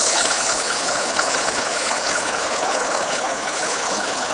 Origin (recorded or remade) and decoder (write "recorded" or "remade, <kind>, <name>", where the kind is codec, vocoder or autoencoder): remade, codec, HILCodec